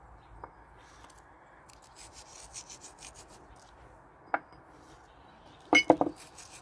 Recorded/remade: recorded